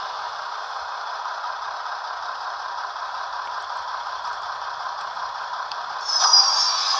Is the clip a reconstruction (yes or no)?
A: yes